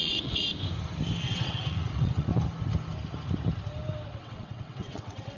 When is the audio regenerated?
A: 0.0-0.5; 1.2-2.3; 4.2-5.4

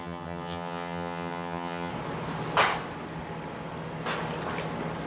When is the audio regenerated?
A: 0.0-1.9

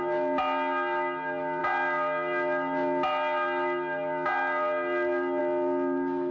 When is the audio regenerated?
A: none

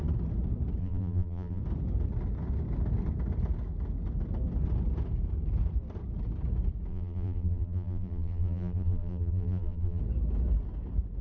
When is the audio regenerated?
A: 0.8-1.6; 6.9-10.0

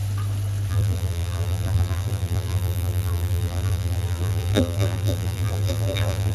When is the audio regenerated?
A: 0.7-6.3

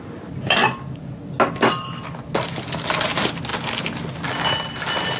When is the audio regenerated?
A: none

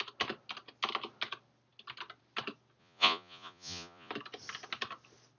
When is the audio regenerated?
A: 2.8-4.1

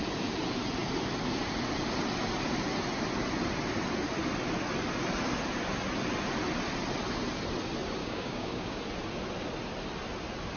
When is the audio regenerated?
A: 8.0-8.8